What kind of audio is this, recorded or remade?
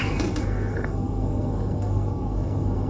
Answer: remade